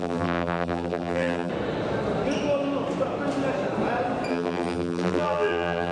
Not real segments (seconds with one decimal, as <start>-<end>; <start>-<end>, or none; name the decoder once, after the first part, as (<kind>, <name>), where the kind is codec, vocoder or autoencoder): 0.0-1.5 (vocoder, BigVGAN v2); 4.3-5.9